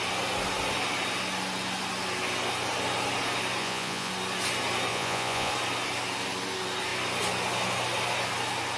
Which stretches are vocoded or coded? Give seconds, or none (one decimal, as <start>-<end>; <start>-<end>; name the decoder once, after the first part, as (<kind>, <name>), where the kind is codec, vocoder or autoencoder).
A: 3.6-4.1 (vocoder, Vocos); 4.9-5.5